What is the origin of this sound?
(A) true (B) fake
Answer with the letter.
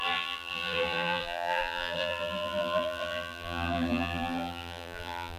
B